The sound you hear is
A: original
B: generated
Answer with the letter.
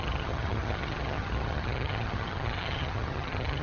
B